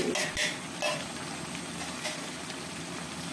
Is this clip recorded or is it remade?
recorded